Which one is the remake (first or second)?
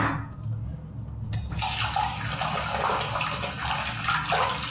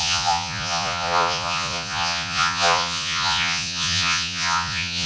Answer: second